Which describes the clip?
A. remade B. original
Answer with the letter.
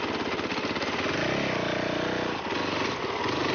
B